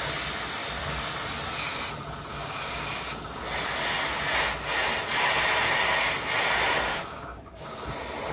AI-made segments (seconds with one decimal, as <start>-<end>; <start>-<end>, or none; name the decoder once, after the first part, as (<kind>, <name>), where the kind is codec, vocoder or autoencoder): 2.3-3.4 (codec, DAC); 6.9-7.9